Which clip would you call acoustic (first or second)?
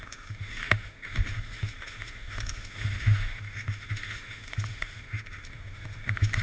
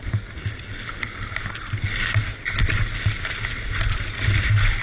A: second